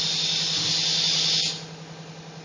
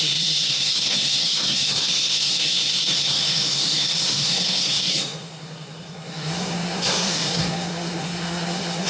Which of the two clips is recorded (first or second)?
first